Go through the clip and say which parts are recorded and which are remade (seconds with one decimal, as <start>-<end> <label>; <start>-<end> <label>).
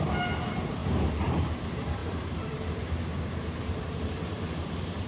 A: 0.0-0.8 remade; 0.8-1.4 recorded; 1.4-5.1 remade